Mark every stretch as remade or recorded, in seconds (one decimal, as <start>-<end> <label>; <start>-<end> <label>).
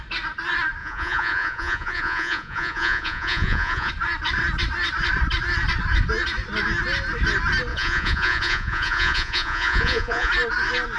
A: 0.0-0.8 recorded; 0.8-3.9 remade; 3.9-7.7 recorded; 7.7-10.3 remade; 10.3-11.0 recorded